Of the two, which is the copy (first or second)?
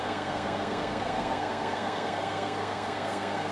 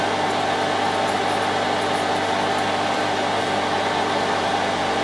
first